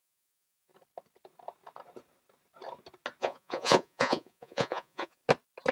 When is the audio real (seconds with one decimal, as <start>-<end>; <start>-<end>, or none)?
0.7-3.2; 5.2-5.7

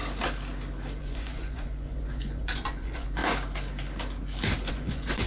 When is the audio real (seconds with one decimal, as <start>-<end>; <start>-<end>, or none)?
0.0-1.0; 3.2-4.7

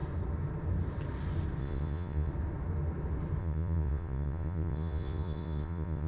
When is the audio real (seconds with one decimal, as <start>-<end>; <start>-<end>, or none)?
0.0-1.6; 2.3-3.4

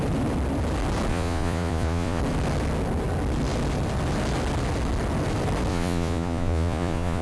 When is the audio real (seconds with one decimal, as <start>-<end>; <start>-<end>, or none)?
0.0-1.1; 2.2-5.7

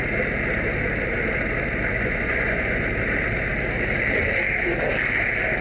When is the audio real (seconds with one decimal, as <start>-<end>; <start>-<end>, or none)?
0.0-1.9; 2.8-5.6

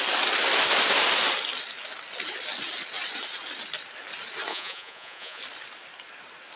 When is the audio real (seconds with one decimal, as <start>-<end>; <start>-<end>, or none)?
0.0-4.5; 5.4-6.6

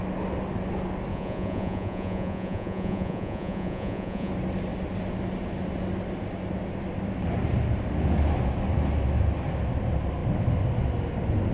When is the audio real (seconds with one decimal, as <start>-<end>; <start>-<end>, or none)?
0.0-1.1; 4.3-11.5

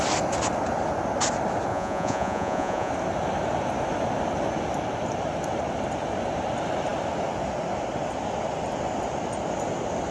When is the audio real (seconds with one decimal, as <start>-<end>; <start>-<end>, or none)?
0.0-1.7; 2.9-10.1